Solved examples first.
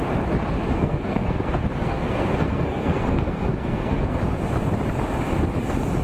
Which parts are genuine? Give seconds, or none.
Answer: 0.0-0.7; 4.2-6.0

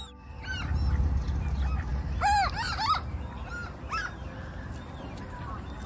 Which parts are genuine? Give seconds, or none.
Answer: 0.0-5.9

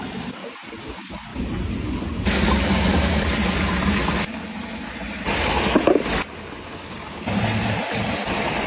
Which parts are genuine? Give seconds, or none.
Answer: 0.0-8.7